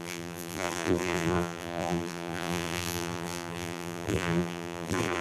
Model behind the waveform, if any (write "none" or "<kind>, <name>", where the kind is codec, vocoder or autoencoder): vocoder, BigVGAN v2